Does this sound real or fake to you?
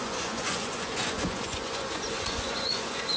fake